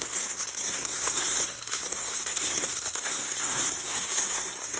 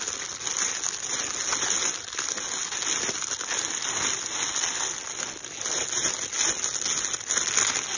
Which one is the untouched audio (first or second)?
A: second